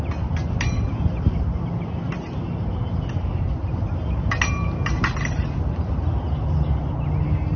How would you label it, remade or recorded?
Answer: recorded